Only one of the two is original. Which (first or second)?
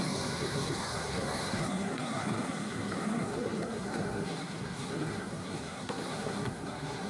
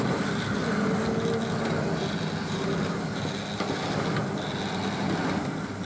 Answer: second